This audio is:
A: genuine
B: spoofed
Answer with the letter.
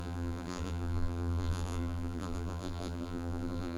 B